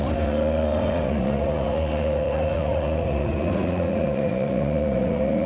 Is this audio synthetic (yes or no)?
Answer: yes